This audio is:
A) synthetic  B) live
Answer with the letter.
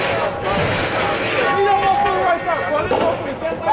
B